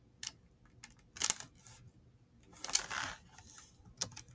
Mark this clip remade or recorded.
recorded